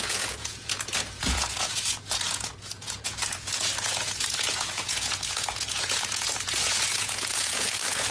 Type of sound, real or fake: fake